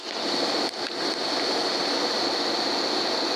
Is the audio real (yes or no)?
yes